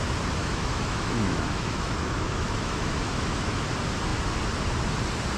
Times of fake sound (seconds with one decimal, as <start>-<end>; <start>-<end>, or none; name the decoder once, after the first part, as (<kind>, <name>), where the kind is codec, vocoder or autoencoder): 0.4-3.6 (autoencoder, DAC-VAE)